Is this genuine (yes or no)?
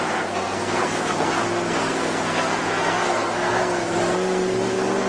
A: no